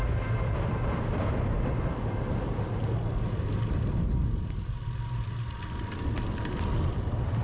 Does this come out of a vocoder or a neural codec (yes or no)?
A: no